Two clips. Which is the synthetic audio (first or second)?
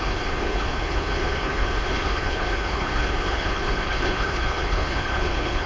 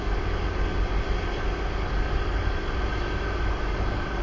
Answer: first